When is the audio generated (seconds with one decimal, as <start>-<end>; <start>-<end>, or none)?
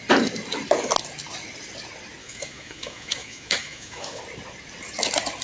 2.2-4.2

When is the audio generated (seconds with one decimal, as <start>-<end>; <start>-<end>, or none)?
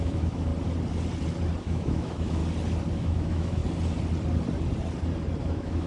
0.0-0.5; 1.6-2.4; 2.9-3.6; 5.4-5.9